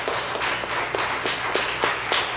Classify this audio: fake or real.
real